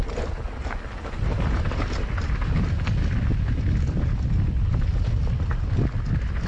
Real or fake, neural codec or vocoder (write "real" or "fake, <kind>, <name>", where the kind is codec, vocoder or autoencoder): real